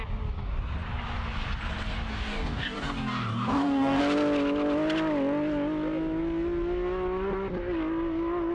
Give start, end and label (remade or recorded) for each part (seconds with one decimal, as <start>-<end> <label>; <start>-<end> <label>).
0.0-2.1 recorded; 2.1-4.0 remade; 4.0-8.5 recorded